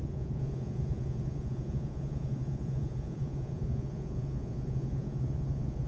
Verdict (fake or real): fake